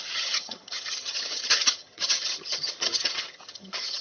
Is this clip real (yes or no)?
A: no